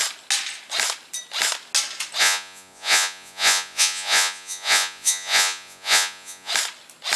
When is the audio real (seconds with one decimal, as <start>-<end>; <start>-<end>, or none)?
0.0-2.2; 6.5-7.2